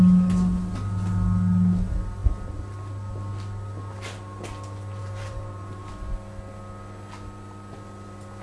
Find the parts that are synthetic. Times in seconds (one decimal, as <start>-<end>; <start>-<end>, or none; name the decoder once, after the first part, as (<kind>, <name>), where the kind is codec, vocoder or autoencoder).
5.0-5.9 (vocoder, BigVGAN v2)